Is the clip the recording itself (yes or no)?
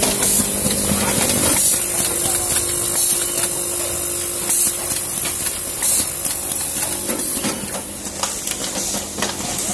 yes